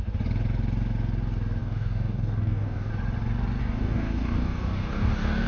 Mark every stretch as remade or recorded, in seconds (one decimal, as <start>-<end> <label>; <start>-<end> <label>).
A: 0.0-1.6 recorded; 1.6-2.9 remade; 2.9-3.6 recorded; 3.6-5.5 remade